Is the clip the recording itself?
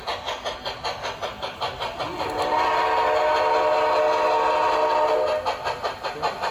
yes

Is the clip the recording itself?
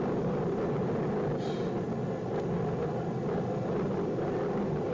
yes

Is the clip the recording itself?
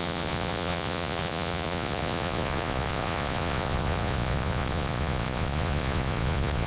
no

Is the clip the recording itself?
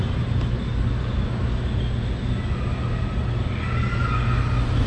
yes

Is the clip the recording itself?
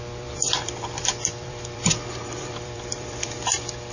no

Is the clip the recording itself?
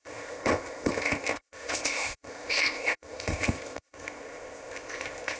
no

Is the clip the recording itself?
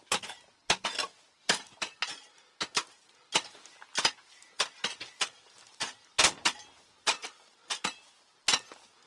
yes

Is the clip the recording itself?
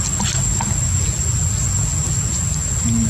yes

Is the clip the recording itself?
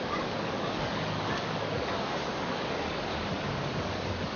no